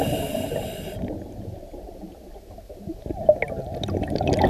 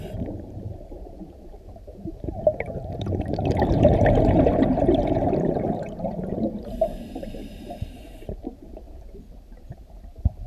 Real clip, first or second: first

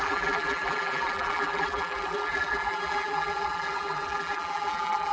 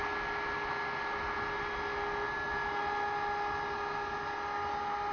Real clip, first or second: second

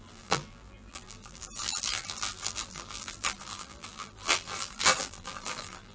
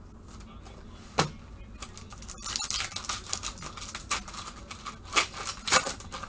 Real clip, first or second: second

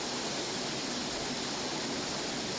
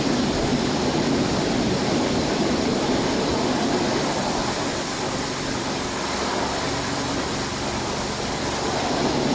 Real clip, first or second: first